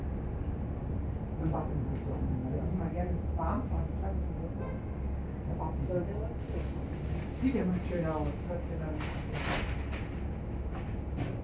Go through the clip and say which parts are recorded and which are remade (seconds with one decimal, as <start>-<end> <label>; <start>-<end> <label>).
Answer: 0.0-11.4 recorded

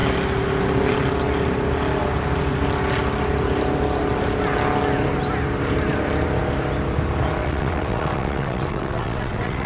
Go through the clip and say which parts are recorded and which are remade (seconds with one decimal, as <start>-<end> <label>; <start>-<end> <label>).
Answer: 0.0-7.4 recorded; 7.4-9.7 remade

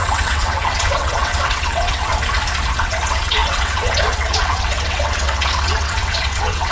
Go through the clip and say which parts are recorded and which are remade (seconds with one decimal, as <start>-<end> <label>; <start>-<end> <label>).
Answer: 0.0-2.1 remade; 2.1-2.8 recorded; 2.8-6.7 remade

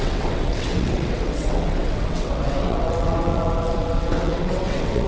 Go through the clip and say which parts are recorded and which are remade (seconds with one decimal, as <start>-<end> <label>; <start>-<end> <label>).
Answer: 0.0-5.1 remade

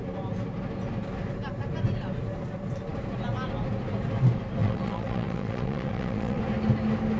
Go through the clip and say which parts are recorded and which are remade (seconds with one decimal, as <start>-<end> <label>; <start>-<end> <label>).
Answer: 0.0-4.6 recorded; 4.6-6.4 remade; 6.4-7.2 recorded

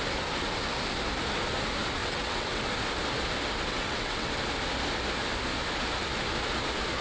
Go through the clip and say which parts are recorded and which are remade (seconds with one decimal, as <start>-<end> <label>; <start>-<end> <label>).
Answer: 0.0-2.0 recorded; 2.0-2.6 remade; 2.6-3.7 recorded; 3.7-4.3 remade; 4.3-7.0 recorded

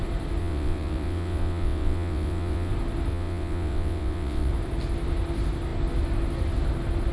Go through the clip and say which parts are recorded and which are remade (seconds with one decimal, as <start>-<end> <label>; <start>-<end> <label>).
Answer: 0.0-0.4 recorded; 0.4-2.7 remade; 2.7-3.1 recorded; 3.1-4.5 remade; 4.5-7.1 recorded